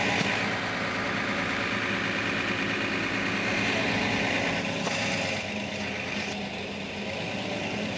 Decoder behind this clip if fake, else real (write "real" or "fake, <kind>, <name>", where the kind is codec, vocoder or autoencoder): real